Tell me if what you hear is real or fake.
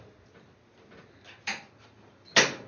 real